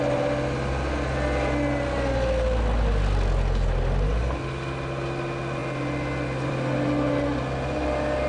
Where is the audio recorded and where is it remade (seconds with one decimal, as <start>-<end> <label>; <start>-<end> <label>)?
0.0-8.3 recorded

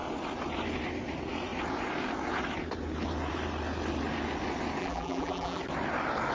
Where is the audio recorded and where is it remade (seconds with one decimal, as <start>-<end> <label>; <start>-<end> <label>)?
0.0-4.8 recorded; 4.8-5.6 remade; 5.6-6.3 recorded

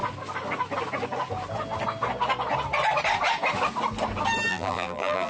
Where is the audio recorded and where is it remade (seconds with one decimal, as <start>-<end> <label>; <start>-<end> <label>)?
0.0-4.5 recorded; 4.5-5.3 remade